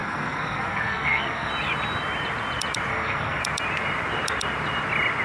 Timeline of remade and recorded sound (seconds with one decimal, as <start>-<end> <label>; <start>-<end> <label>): 0.0-1.5 remade; 1.5-2.9 recorded; 2.9-3.4 remade; 3.4-5.2 recorded